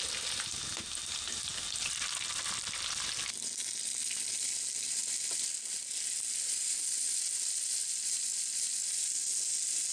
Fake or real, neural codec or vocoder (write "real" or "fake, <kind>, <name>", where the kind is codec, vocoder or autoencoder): real